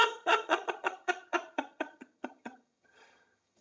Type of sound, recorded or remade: remade